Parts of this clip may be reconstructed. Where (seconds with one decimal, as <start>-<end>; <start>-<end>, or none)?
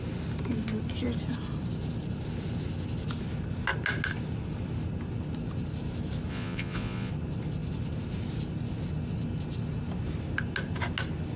6.3-7.1